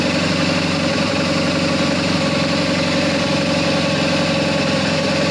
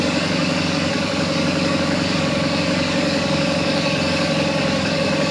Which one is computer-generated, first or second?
second